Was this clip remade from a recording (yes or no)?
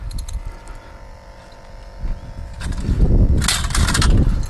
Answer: no